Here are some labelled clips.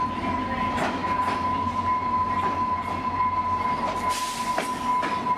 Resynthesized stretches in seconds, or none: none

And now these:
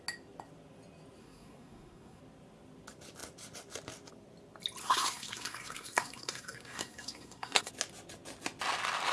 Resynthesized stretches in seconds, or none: 1.2-2.2 (codec, SNAC); 4.8-7.7

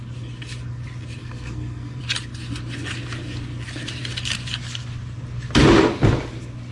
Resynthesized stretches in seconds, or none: 1.2-2.0 (codec, SNAC)

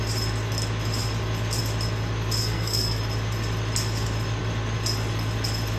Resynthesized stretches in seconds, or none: 2.4-3.0 (codec, SNAC)

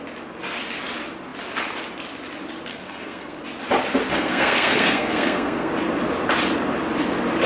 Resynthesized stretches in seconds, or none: 2.7-3.4 (codec, SNAC); 4.1-5.7

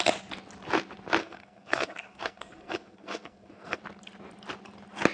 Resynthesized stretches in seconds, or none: 1.2-3.8 (codec, SNAC)